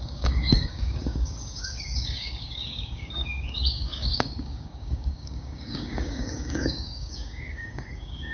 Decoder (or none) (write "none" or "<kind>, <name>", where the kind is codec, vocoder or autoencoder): codec, DAC